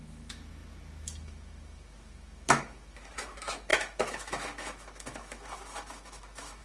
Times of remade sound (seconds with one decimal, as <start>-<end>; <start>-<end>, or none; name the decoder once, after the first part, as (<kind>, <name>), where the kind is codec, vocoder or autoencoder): 0.0-6.6 (autoencoder, DAC-VAE)